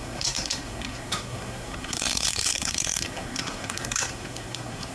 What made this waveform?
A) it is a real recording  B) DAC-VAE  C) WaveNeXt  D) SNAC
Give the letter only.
D